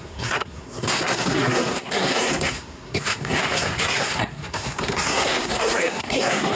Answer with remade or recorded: remade